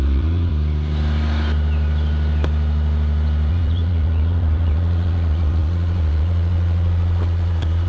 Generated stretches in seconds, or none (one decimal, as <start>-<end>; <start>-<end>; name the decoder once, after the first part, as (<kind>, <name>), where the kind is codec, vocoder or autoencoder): 0.0-0.5 (vocoder, Vocos); 3.5-7.9